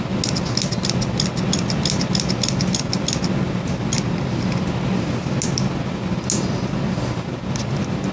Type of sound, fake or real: real